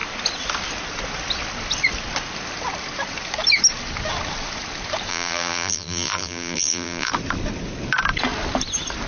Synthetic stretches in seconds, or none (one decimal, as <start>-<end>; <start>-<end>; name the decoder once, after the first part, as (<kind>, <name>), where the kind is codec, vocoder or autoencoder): 5.1-7.1 (vocoder, BigVGAN v2)